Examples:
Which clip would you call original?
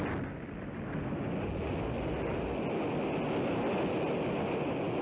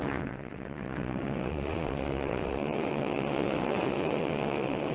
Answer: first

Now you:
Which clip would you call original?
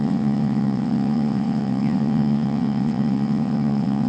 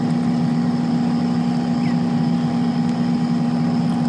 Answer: second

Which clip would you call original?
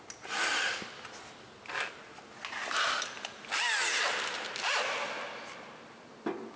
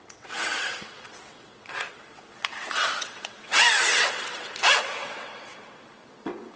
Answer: first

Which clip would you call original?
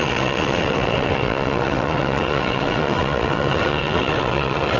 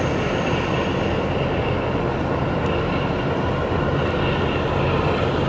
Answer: second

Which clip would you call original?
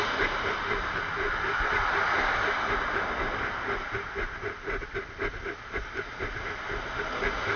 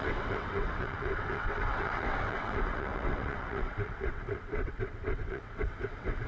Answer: first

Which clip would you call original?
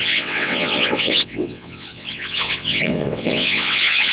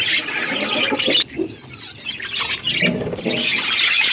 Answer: second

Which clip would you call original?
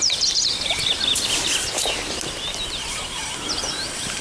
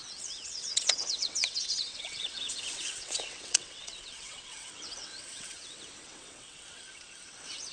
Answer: first